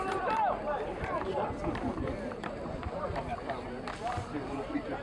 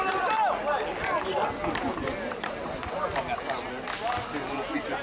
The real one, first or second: second